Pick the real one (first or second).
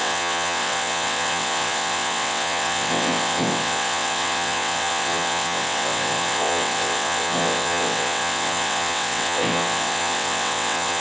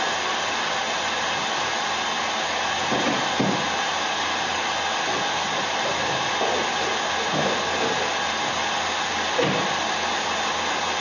second